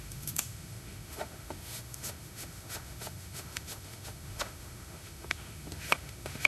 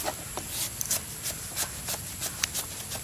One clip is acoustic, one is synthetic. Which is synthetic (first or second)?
first